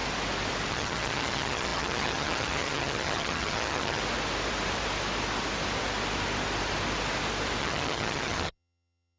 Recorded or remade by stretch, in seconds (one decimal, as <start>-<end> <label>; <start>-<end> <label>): 0.0-0.7 recorded; 0.7-4.0 remade; 4.0-7.6 recorded; 7.6-9.2 remade